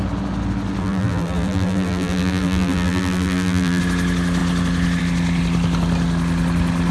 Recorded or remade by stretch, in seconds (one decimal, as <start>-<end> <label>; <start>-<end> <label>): 0.0-0.8 recorded; 0.8-3.8 remade; 3.8-6.9 recorded